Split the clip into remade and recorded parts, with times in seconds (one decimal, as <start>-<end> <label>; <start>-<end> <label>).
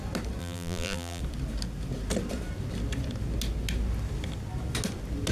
0.0-0.4 recorded; 0.4-1.2 remade; 1.2-5.3 recorded